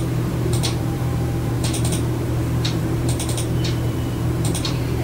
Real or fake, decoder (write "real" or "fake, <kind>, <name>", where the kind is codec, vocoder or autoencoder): fake, vocoder, BigVGAN v2